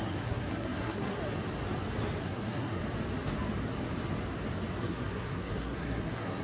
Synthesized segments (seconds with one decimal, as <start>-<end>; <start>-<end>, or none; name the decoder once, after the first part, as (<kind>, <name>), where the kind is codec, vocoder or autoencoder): 0.0-1.2 (codec, SNAC); 2.2-2.8; 4.8-6.4